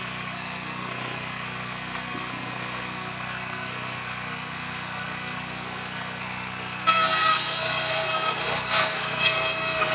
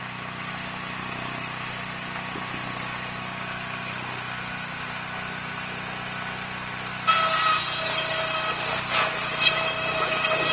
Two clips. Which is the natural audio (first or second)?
second